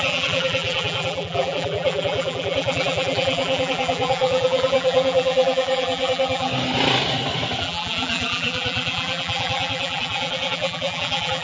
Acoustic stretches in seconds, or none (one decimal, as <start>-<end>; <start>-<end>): 6.5-7.6